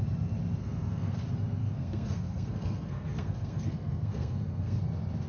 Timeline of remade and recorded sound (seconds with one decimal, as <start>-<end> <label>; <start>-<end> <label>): 0.0-0.6 recorded; 0.6-1.2 remade; 1.2-1.6 recorded; 1.6-4.8 remade; 4.8-5.3 recorded